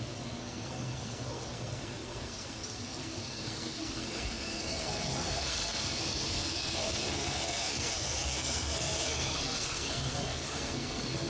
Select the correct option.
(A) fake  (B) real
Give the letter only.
A